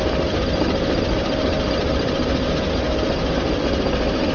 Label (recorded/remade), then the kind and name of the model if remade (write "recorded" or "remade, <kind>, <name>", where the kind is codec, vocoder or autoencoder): recorded